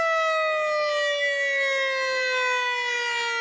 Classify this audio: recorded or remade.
recorded